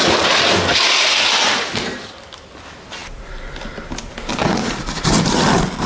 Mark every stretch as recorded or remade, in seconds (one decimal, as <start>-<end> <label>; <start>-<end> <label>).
0.0-5.9 recorded